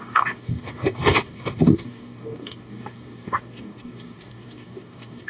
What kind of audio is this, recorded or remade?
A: remade